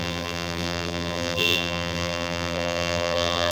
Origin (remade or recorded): remade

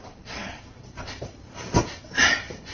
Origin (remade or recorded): recorded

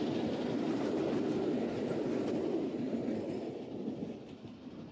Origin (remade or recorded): recorded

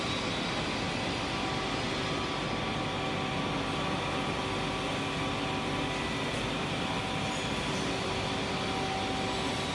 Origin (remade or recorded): recorded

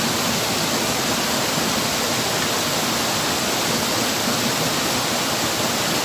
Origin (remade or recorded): recorded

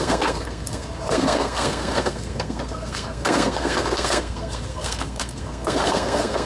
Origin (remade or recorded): remade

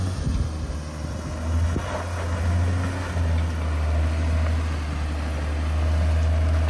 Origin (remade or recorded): recorded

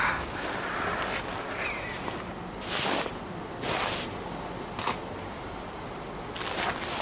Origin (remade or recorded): recorded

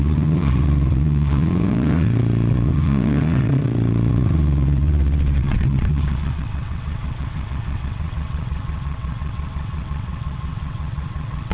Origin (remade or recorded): remade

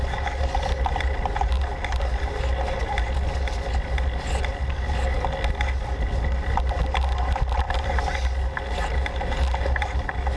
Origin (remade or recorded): recorded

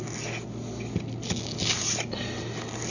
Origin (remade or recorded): recorded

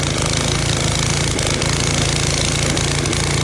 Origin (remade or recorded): recorded